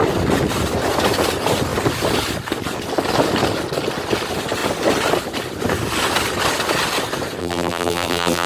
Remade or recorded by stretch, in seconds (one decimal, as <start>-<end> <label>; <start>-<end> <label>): 0.0-7.4 recorded; 7.4-8.5 remade